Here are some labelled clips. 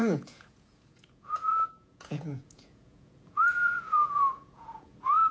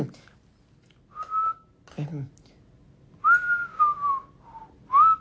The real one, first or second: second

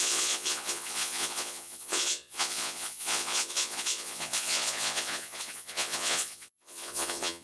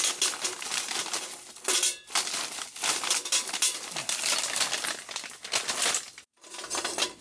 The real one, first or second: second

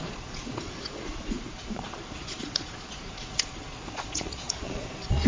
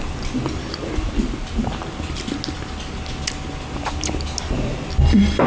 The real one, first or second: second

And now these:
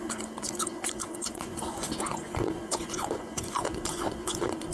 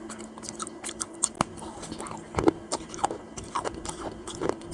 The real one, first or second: second